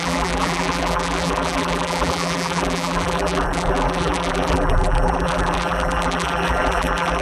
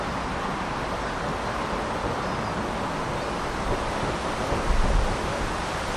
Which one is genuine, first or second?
second